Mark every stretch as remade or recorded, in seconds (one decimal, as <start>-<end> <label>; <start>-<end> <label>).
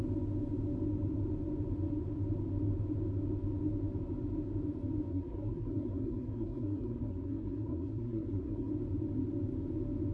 0.0-5.1 recorded; 5.1-8.7 remade; 8.7-10.1 recorded